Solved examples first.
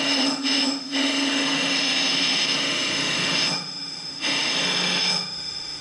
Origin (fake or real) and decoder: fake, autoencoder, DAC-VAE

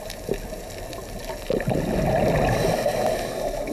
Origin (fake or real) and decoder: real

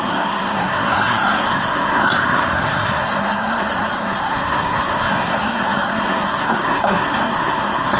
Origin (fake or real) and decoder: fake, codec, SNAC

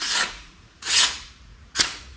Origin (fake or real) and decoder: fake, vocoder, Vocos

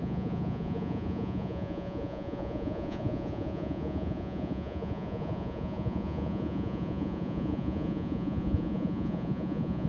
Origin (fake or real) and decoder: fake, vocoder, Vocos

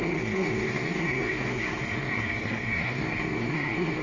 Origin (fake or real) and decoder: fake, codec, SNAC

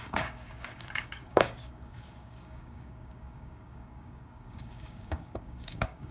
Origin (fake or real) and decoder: fake, codec, DAC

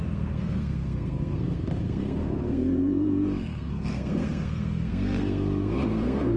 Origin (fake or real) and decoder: fake, codec, SNAC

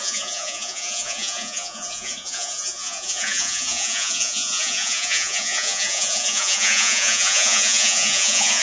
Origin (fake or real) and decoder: fake, vocoder, Vocos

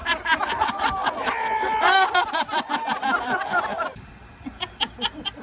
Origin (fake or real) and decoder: real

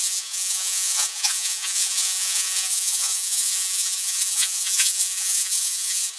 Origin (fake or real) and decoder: fake, vocoder, Vocos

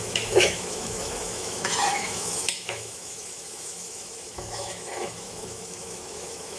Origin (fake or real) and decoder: fake, autoencoder, DAC-VAE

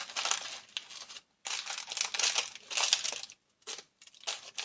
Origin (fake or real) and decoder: real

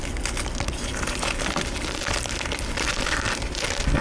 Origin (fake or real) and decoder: real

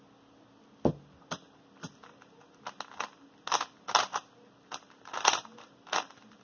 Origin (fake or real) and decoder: real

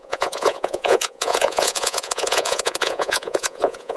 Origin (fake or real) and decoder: fake, vocoder, Vocos